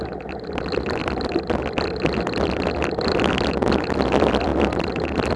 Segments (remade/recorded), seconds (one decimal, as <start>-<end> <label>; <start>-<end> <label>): 0.0-1.0 recorded; 1.0-3.7 remade; 3.7-4.5 recorded; 4.5-5.4 remade